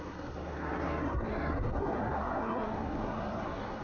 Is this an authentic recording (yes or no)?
no